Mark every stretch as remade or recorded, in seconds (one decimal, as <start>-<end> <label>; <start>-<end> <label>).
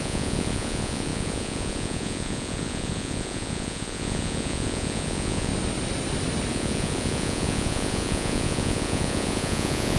0.0-5.5 remade; 5.5-6.5 recorded; 6.5-10.0 remade